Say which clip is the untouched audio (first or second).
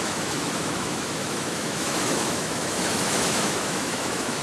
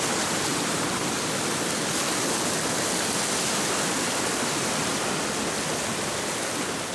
second